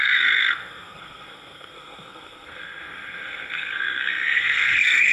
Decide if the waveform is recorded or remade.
remade